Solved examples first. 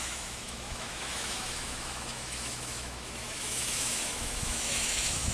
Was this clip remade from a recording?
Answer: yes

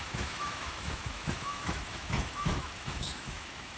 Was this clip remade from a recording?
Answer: yes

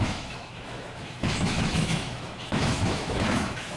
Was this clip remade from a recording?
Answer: yes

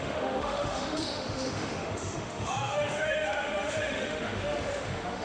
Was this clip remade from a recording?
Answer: yes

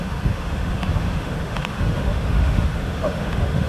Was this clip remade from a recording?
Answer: yes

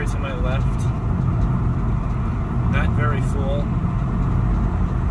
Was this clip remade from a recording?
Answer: no